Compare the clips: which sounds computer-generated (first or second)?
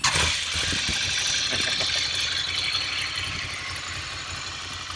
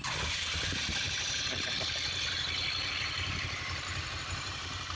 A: second